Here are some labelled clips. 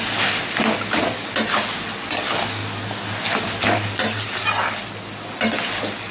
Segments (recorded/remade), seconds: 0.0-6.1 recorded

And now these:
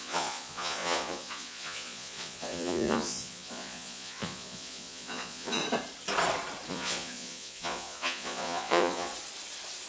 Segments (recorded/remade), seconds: 0.0-5.6 remade; 5.6-6.7 recorded; 6.7-9.1 remade; 9.1-9.9 recorded

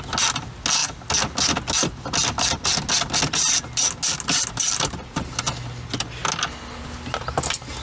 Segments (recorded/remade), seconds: 0.0-7.8 recorded

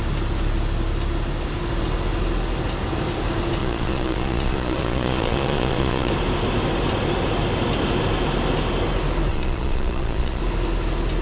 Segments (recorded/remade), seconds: 0.0-3.6 recorded; 3.6-6.1 remade; 6.1-9.3 recorded; 9.3-10.4 remade; 10.4-11.2 recorded

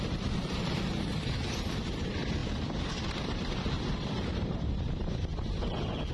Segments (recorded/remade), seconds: 0.0-5.3 remade; 5.3-6.1 recorded